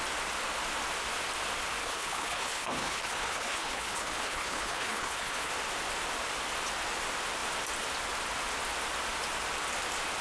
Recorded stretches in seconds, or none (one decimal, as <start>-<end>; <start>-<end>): 0.0-1.8; 5.5-10.2